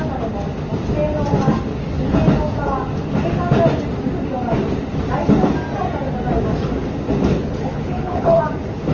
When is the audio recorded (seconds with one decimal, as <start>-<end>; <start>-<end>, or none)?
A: 0.0-7.3; 8.4-8.9